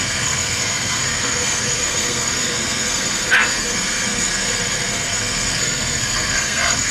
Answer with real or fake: fake